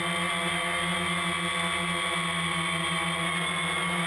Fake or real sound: real